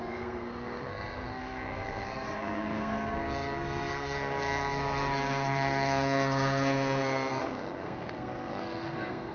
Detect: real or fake fake